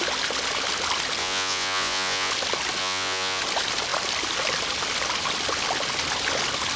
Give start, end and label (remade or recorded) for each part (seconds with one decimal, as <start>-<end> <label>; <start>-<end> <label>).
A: 0.0-1.2 recorded; 1.2-2.3 remade; 2.3-2.8 recorded; 2.8-3.4 remade; 3.4-6.8 recorded